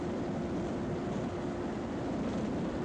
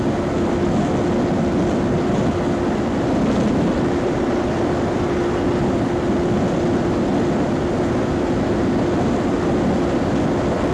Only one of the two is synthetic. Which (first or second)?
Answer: first